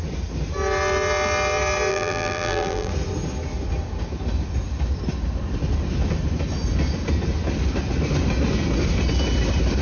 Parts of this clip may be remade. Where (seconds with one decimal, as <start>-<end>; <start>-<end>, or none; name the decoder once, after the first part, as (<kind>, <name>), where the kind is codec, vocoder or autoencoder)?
1.9-2.9 (vocoder, BigVGAN v2)